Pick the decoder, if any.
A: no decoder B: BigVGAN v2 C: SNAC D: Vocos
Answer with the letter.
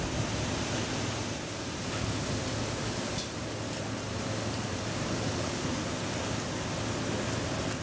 A